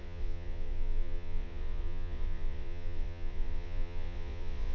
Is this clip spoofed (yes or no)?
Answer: yes